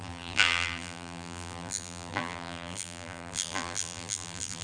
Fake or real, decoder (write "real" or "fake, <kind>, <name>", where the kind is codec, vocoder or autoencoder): fake, vocoder, BigVGAN v2